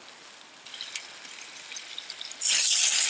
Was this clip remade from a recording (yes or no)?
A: no